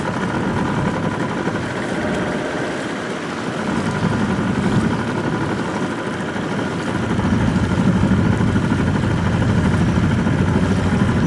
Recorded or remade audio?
recorded